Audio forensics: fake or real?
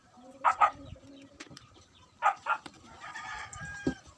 fake